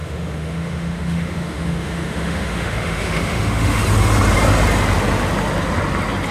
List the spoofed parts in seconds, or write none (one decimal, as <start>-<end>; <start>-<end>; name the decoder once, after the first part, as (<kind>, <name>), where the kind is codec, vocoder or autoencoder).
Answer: 0.0-3.8 (autoencoder, DAC-VAE)